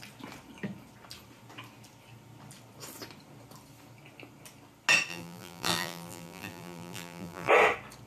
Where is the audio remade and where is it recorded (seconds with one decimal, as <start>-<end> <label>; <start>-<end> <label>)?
0.0-5.1 recorded; 5.1-7.5 remade; 7.5-8.1 recorded